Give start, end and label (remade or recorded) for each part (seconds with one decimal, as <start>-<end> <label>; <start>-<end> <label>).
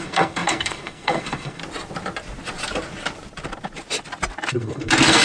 0.0-1.6 remade; 1.6-4.5 recorded; 4.5-5.2 remade